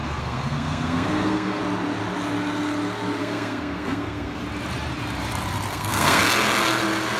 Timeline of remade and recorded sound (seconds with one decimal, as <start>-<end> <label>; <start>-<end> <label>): 0.0-1.6 remade; 1.6-3.2 recorded; 3.2-4.4 remade; 4.4-5.7 recorded; 5.7-6.2 remade; 6.2-7.2 recorded